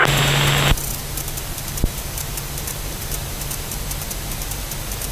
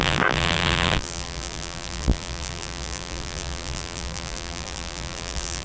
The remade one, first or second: second